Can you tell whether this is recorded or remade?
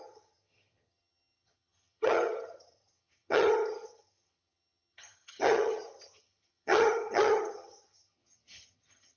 remade